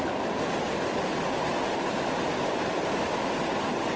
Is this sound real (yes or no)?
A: yes